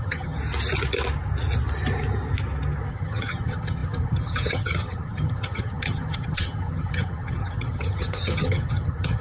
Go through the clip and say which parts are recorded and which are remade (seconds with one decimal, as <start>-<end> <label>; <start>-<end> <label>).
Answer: 0.0-0.4 remade; 0.4-2.9 recorded; 2.9-9.2 remade